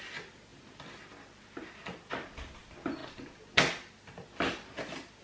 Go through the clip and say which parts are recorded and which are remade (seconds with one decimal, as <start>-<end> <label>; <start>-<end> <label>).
0.0-5.2 recorded